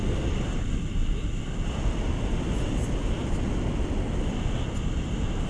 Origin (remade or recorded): recorded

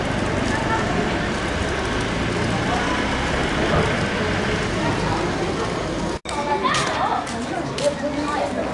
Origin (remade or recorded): recorded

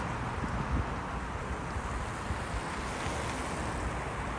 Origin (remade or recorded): recorded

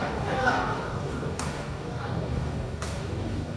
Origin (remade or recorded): remade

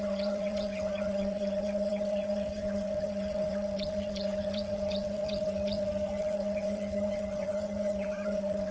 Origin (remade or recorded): remade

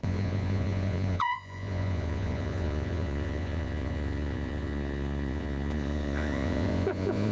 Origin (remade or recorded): remade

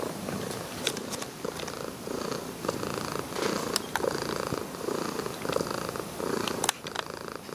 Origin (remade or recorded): recorded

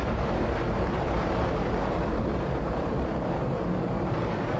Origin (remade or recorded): remade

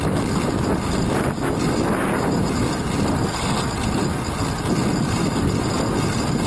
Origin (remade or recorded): recorded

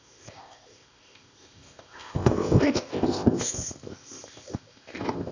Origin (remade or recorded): remade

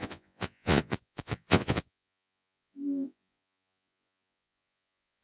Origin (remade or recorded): remade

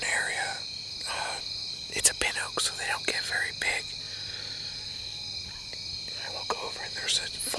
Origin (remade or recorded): recorded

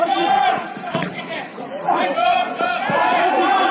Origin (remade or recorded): remade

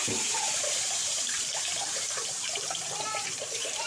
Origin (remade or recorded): remade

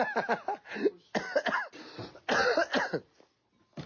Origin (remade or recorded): recorded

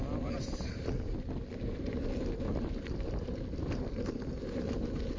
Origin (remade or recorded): recorded